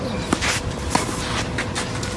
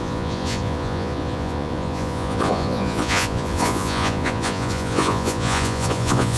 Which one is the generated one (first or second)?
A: second